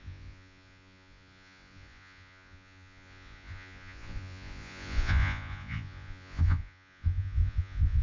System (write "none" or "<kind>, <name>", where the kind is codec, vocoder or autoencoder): vocoder, Vocos